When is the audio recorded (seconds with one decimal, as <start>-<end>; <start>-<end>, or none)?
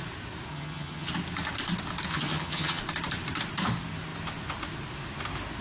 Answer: 0.0-0.5; 1.1-2.1; 2.8-5.6